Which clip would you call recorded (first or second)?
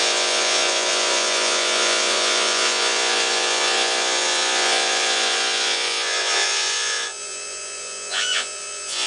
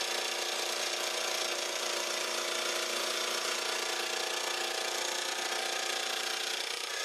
second